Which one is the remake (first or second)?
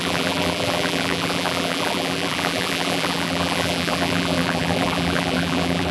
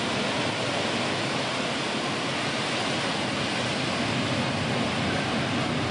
first